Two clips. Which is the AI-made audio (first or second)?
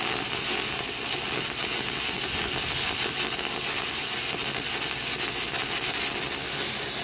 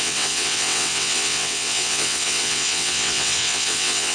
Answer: second